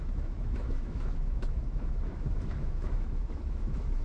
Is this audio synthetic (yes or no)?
yes